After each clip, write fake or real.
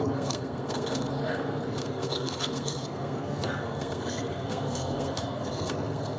fake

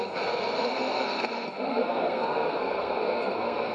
fake